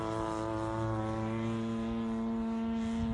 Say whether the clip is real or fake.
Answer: real